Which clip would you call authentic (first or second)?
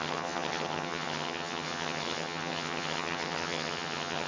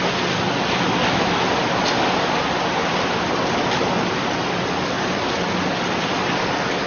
second